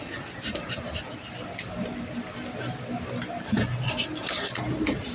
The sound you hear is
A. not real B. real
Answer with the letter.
B